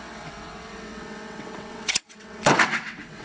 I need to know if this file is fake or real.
fake